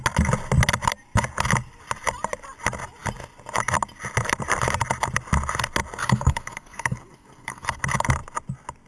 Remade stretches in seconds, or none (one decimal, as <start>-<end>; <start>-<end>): 6.0-7.8